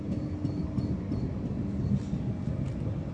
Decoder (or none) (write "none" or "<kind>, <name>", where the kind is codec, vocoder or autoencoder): none